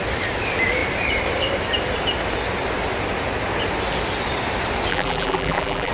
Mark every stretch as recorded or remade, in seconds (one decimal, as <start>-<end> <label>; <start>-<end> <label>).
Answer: 0.0-4.9 recorded; 4.9-5.9 remade